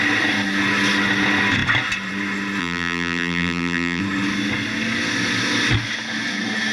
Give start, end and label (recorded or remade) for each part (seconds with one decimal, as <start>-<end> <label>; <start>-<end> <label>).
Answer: 0.0-2.6 recorded; 2.6-4.0 remade; 4.0-6.7 recorded